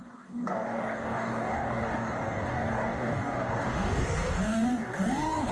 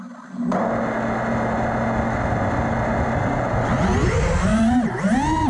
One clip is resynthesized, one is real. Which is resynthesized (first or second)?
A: first